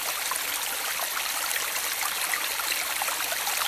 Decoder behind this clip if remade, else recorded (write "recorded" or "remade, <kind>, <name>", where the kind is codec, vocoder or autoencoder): recorded